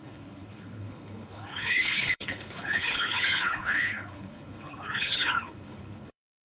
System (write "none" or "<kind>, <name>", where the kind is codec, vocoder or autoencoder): codec, HILCodec